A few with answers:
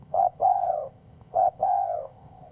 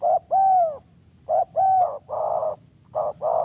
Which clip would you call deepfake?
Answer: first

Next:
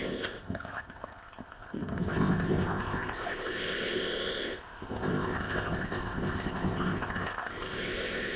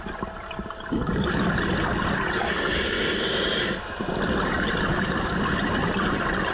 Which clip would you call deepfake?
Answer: first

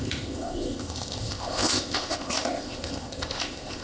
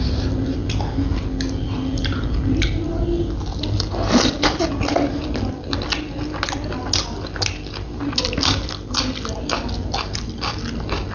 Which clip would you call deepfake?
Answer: first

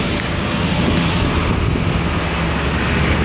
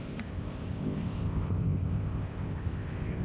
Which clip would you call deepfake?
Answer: second